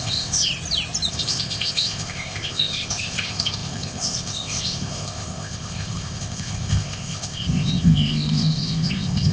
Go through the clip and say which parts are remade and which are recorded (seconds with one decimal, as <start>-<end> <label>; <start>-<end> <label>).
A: 0.0-0.5 remade; 0.5-1.1 recorded; 1.1-9.3 remade